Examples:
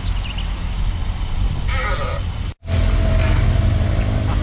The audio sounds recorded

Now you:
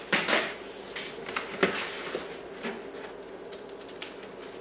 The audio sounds recorded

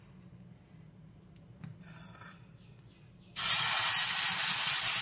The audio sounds recorded